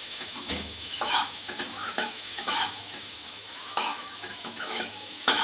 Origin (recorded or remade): remade